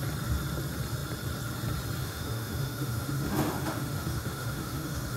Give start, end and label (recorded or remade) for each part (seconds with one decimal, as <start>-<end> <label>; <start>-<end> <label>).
0.0-2.0 recorded; 2.0-5.2 remade